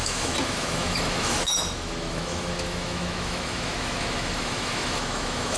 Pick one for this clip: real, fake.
fake